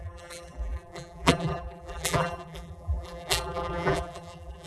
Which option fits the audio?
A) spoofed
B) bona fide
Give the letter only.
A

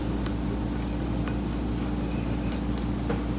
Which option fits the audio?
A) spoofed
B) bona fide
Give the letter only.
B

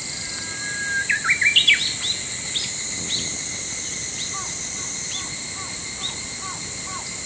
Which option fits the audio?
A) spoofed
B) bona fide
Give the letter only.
B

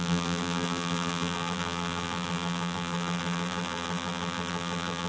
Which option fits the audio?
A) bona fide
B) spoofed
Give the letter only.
B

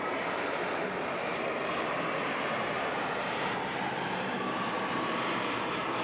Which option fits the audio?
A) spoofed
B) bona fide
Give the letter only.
A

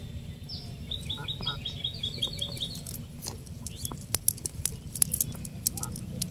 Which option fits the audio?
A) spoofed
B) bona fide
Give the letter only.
B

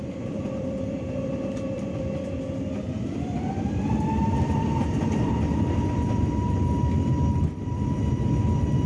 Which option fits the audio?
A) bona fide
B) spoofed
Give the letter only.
B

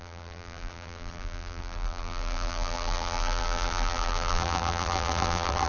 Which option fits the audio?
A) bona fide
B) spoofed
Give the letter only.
B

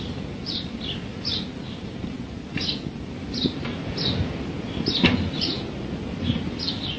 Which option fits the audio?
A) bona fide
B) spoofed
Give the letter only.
A